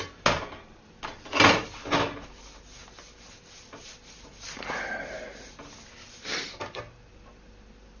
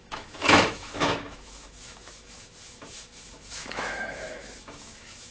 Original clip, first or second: first